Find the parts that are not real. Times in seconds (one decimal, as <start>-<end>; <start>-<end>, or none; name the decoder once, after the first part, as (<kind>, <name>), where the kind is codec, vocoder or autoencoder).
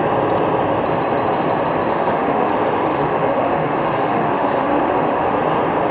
1.9-2.5 (autoencoder, DAC-VAE); 2.9-5.4